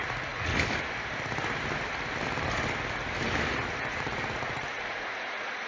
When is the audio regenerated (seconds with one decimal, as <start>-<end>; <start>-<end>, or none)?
0.0-0.5; 3.9-5.7